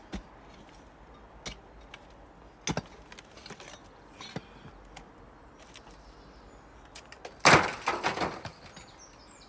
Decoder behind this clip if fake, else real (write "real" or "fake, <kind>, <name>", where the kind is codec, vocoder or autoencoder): real